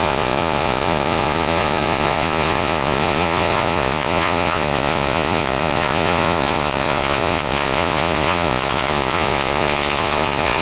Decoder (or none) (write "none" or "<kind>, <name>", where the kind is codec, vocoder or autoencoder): vocoder, Vocos